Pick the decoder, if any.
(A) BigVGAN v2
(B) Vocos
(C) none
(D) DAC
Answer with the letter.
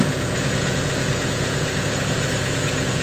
B